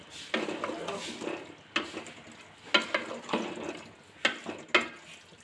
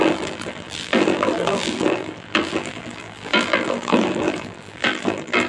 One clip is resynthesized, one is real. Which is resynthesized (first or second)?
second